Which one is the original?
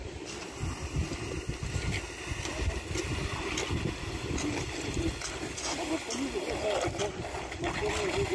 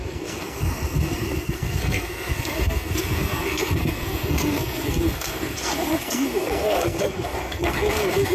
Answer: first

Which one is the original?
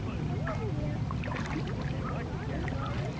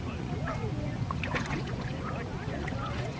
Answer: first